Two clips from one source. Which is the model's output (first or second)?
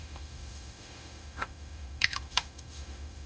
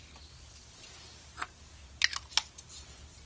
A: first